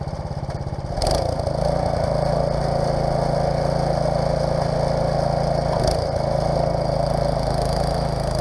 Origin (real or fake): real